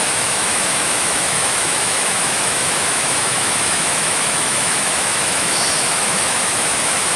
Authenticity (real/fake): fake